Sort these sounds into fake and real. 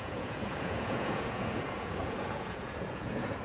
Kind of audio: fake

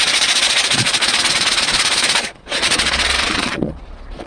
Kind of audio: fake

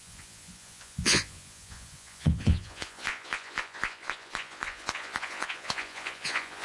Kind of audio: fake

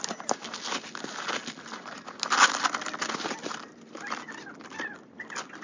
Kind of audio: real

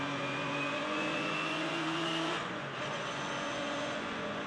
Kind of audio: fake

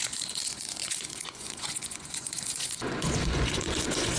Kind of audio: fake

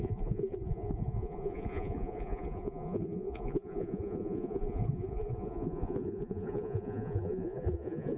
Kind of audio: fake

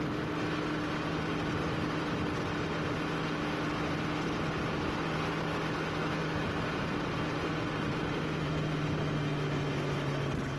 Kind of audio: real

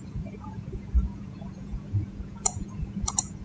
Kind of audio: fake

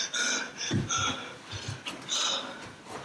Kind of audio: real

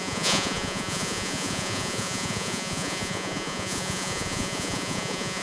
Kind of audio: fake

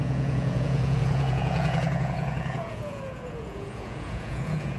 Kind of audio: fake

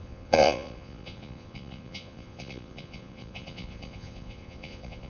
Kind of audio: fake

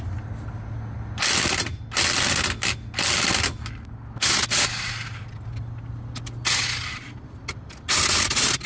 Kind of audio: real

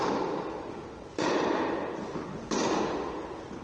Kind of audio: real